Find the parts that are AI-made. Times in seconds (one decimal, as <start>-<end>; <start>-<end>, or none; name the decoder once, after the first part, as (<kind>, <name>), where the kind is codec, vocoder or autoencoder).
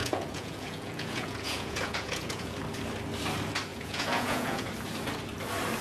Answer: 0.0-2.6 (vocoder, Vocos); 3.7-4.7